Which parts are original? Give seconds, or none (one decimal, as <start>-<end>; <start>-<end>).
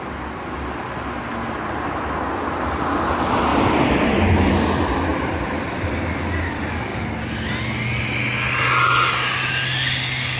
0.0-3.5; 4.3-5.1; 6.0-10.4